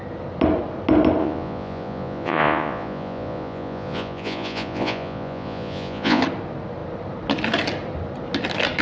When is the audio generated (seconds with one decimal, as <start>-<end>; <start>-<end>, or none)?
1.2-6.2